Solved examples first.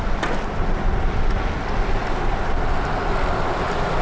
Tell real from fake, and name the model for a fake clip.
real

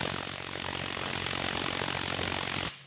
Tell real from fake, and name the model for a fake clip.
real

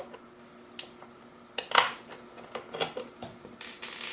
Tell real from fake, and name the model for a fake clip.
real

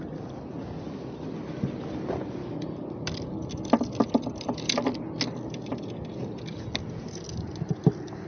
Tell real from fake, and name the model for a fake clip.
real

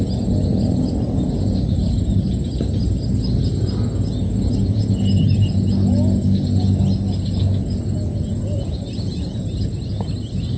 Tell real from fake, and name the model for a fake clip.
real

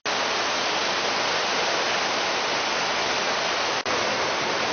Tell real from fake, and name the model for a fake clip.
real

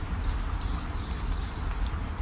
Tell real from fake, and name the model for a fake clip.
real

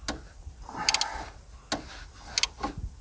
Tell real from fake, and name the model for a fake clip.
real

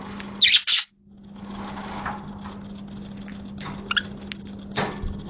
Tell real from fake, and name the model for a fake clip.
real